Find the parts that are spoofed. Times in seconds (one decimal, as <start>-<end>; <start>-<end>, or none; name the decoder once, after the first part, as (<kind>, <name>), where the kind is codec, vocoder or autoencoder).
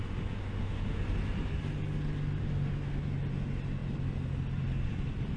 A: 0.4-1.0 (autoencoder, DAC-VAE); 2.4-3.0